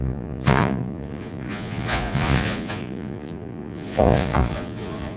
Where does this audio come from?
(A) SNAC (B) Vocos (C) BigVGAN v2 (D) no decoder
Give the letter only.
B